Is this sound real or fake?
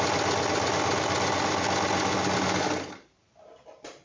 real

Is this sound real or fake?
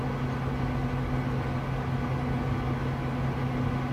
real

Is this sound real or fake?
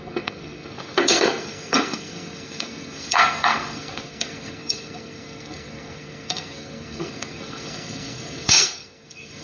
fake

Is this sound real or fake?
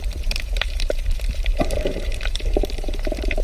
fake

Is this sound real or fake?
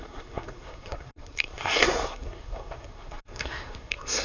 fake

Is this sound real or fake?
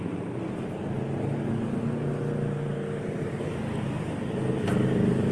real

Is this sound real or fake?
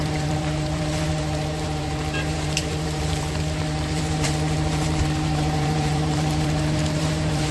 fake